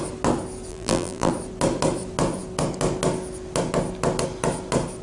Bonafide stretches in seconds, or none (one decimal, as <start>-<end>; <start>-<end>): 0.0-0.7; 1.3-5.0